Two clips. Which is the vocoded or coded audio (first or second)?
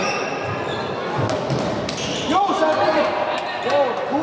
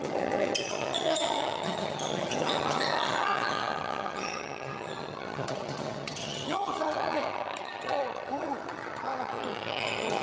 second